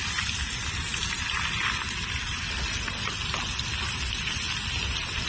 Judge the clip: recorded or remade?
recorded